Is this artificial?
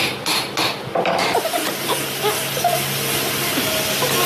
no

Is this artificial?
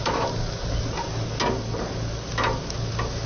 no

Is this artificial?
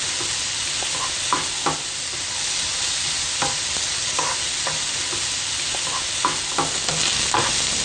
no